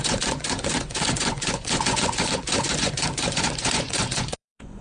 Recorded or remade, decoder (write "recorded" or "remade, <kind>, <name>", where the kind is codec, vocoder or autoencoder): remade, vocoder, Vocos